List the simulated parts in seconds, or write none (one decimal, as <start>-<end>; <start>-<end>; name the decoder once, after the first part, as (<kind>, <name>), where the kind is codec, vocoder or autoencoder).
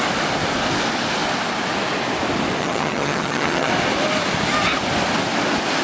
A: 2.6-3.7 (vocoder, HiFi-GAN)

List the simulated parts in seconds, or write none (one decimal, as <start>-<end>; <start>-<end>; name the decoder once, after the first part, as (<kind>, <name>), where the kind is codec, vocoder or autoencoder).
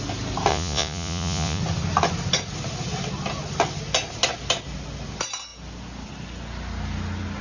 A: 0.5-1.6 (vocoder, Vocos)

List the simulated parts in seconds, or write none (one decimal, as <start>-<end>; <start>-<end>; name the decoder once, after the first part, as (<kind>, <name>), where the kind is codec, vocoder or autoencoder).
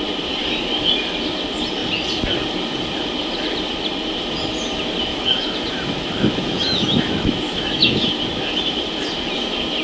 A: 5.1-8.2 (autoencoder, DAC-VAE)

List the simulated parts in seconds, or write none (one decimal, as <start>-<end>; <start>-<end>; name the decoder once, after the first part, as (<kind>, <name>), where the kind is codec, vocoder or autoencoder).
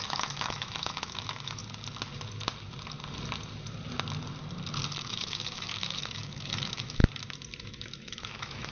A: 0.0-1.6 (autoencoder, DAC-VAE); 5.0-7.0; 7.6-8.7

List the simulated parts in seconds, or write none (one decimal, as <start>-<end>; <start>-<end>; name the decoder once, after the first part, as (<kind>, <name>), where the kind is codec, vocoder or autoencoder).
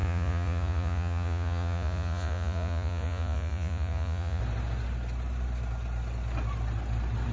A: 0.0-4.4 (vocoder, Vocos)